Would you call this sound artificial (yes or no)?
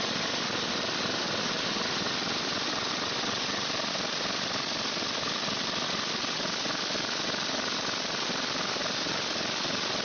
yes